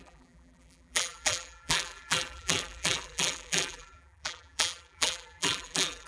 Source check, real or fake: fake